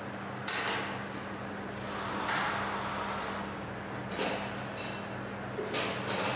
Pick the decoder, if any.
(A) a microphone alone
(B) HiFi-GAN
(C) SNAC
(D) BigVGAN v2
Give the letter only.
A